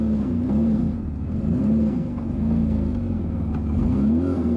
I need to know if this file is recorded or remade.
remade